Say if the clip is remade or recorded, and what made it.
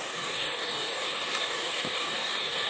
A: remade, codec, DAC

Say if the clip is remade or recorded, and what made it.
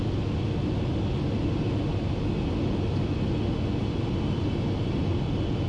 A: recorded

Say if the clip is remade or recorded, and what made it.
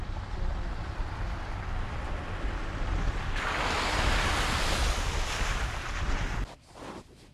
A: remade, vocoder, BigVGAN v2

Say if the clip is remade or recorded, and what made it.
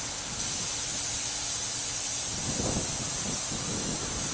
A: recorded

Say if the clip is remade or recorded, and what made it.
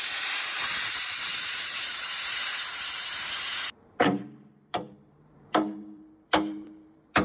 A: remade, vocoder, BigVGAN v2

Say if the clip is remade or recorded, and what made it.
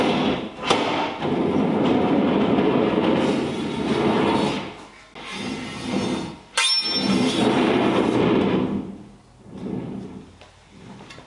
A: recorded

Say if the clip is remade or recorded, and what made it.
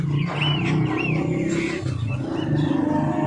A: recorded